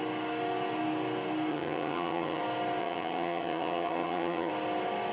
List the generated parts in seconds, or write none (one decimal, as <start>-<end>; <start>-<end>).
1.5-2.4; 2.8-4.5